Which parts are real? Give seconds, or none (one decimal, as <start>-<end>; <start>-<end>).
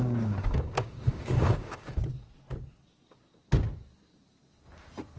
2.0-5.2